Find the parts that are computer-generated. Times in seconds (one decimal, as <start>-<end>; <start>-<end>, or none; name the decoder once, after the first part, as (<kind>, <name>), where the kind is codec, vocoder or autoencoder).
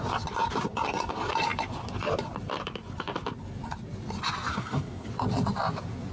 4.5-5.1 (codec, SNAC)